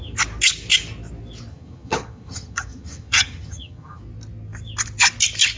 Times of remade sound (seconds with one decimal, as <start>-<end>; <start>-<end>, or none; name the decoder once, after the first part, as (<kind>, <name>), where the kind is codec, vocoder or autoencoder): 1.5-4.0 (vocoder, HiFi-GAN)